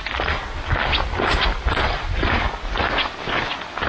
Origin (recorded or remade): recorded